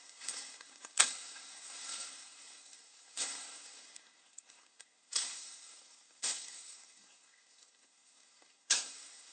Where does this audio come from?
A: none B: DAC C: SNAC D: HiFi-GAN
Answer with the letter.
C